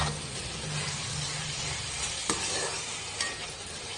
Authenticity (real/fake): real